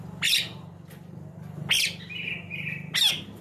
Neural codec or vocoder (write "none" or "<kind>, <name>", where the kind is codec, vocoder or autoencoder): none